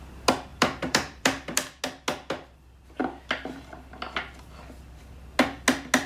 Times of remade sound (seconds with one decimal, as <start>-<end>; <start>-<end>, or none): 0.5-1.8